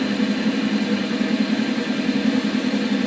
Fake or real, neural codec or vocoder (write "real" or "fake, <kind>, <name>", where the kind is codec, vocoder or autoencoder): real